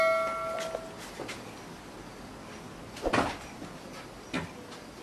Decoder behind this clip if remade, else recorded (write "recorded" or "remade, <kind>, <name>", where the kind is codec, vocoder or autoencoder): recorded